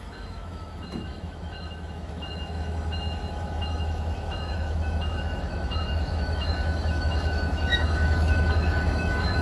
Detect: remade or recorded remade